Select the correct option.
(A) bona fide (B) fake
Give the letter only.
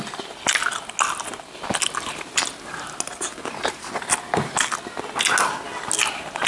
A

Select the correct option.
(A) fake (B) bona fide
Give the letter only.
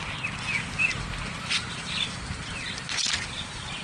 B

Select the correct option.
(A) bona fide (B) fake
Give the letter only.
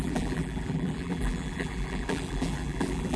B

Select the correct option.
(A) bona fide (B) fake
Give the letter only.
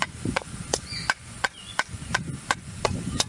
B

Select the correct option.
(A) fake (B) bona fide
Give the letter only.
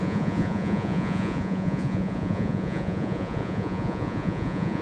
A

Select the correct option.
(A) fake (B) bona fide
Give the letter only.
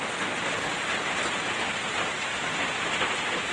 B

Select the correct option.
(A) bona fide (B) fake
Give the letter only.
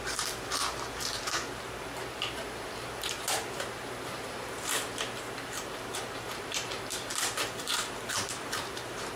B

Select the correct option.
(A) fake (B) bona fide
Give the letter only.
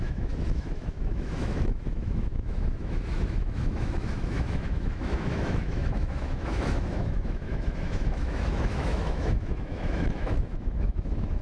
A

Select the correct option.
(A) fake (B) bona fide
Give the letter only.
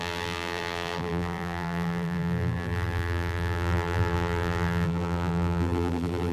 A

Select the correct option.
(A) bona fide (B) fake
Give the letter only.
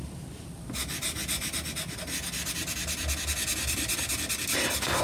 A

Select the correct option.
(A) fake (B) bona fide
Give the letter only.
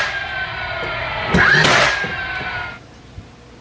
B